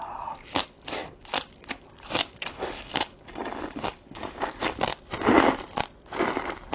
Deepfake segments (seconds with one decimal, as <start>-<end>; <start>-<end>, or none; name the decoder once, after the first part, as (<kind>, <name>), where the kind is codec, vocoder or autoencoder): none